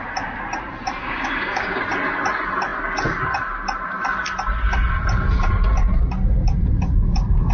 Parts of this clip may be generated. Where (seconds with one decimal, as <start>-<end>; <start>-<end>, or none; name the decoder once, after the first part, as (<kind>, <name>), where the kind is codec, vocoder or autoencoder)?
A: 1.0-1.8 (codec, DAC)